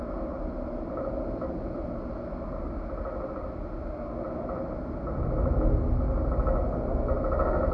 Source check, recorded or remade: recorded